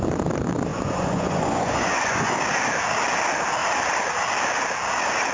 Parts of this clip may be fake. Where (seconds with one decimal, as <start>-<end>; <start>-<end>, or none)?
0.7-2.3